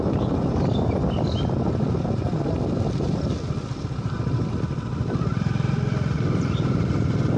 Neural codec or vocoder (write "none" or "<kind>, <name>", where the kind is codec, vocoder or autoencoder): none